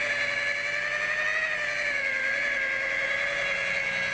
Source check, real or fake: real